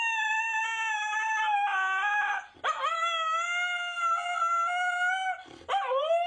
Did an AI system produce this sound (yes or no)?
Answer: no